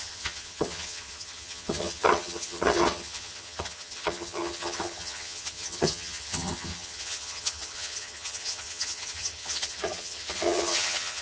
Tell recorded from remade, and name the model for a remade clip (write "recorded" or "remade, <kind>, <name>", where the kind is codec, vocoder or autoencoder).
remade, vocoder, HiFi-GAN